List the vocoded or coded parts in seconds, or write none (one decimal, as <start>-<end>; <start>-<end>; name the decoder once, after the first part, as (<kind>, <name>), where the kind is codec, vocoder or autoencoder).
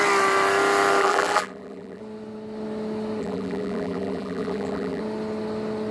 1.0-2.0 (vocoder, BigVGAN v2); 3.2-5.0